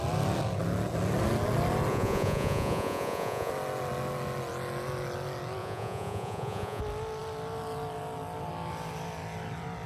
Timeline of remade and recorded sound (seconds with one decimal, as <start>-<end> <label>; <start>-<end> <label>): 0.0-1.9 recorded; 1.9-3.5 remade; 3.5-5.6 recorded; 5.6-6.8 remade; 6.8-9.9 recorded